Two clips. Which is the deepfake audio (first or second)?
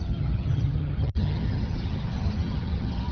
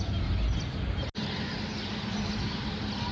first